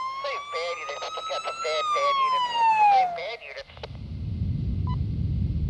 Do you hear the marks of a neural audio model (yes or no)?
no